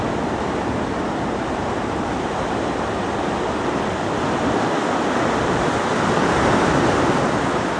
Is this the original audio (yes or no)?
yes